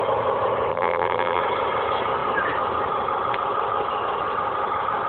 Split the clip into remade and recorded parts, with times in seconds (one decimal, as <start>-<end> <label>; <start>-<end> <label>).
0.0-0.7 recorded; 0.7-1.4 remade; 1.4-5.1 recorded